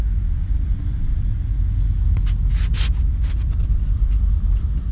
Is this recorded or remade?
recorded